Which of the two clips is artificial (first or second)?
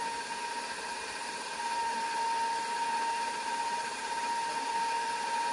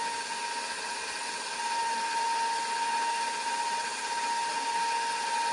first